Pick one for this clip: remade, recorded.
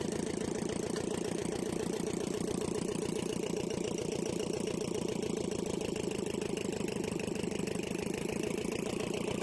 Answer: remade